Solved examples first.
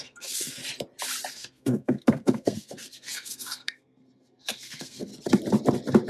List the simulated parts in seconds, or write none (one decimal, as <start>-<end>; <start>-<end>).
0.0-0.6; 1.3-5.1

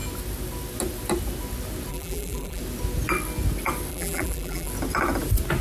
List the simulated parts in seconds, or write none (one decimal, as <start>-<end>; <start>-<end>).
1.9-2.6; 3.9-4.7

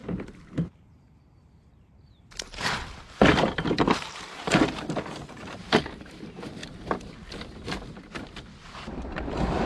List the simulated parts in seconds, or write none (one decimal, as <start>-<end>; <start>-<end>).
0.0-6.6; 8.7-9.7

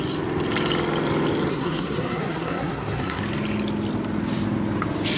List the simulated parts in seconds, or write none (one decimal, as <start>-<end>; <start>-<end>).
1.5-3.2